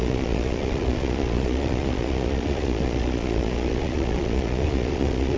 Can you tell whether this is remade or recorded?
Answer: remade